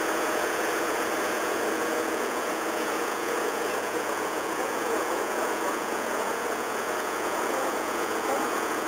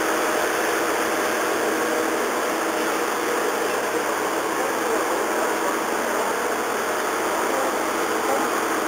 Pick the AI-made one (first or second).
first